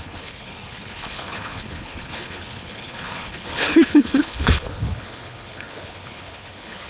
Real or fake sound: fake